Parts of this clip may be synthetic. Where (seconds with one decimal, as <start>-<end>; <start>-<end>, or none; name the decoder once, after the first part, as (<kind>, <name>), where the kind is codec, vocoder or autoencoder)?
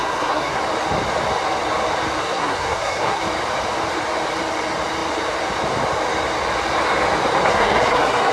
0.0-0.6 (codec, SNAC); 2.2-3.2; 7.5-8.3